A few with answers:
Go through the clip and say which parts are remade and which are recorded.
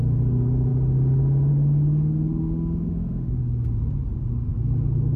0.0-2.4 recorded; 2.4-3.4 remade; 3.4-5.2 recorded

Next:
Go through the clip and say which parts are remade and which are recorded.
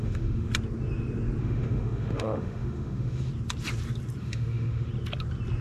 0.0-0.5 remade; 0.5-1.4 recorded; 1.4-3.3 remade; 3.3-4.2 recorded; 4.2-4.9 remade; 4.9-5.6 recorded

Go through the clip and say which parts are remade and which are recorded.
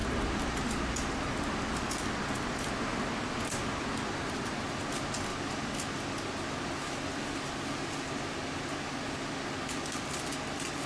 0.0-10.9 recorded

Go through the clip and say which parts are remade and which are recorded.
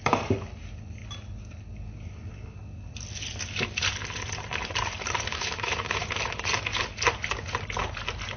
0.0-5.3 recorded; 5.3-6.1 remade; 6.1-8.4 recorded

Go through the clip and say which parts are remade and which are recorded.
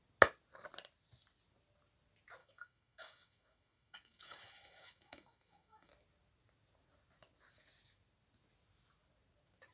0.0-2.4 recorded; 2.4-5.9 remade; 5.9-9.7 recorded